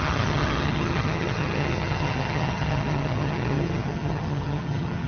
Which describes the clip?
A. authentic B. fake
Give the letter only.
B